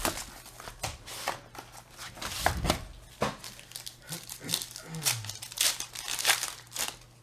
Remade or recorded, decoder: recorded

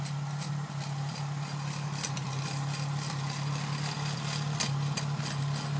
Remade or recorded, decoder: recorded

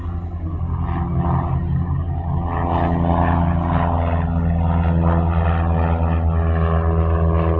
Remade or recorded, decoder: recorded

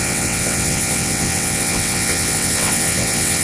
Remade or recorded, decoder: remade, vocoder, WaveNeXt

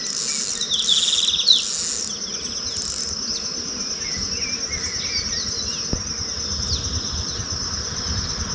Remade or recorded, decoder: recorded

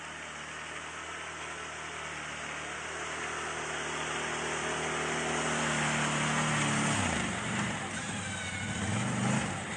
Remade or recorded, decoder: recorded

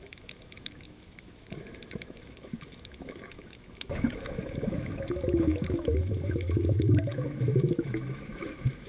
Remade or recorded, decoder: remade, autoencoder, DAC-VAE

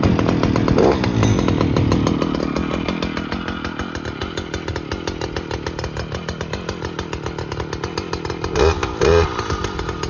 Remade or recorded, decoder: recorded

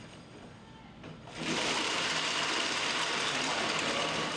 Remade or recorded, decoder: recorded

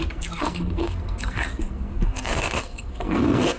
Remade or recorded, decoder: remade, codec, SNAC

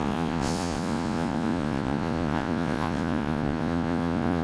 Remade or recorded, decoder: remade, vocoder, Vocos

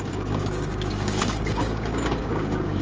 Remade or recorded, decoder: remade, codec, DAC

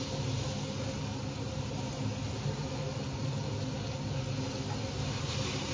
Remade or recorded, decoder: recorded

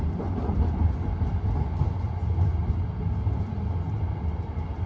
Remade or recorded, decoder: recorded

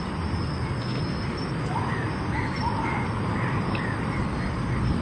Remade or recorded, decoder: recorded